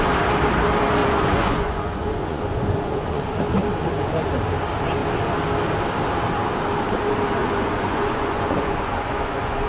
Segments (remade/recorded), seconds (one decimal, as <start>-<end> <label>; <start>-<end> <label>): 0.0-1.0 recorded; 1.0-3.4 remade; 3.4-3.8 recorded; 3.8-4.3 remade; 4.3-7.4 recorded; 7.4-9.7 remade